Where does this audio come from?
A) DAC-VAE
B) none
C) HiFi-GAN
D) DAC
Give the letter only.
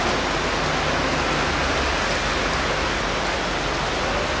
B